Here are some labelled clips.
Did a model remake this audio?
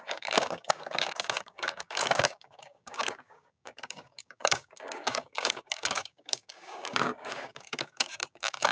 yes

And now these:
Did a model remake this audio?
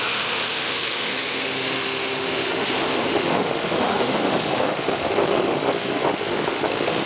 yes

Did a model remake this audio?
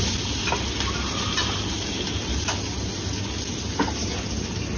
no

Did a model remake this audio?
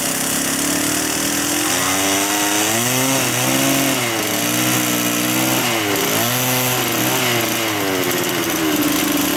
no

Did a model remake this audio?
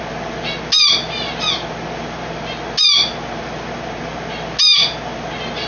no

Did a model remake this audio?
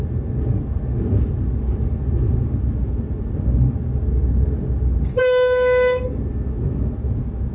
no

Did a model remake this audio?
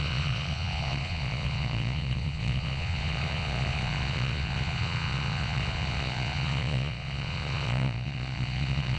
yes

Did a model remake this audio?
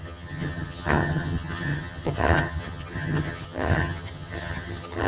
yes